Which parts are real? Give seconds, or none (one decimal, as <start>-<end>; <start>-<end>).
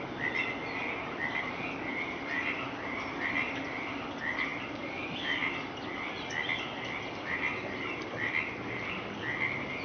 0.0-9.8